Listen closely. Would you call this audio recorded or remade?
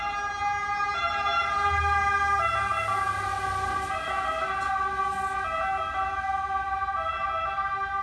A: recorded